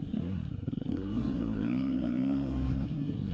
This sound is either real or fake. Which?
fake